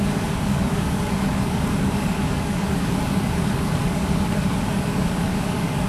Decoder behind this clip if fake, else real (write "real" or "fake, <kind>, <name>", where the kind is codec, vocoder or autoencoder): fake, codec, DAC